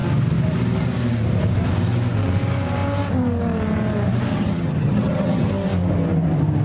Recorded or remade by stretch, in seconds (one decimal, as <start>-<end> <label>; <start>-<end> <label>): 0.0-4.3 recorded; 4.3-5.5 remade; 5.5-6.6 recorded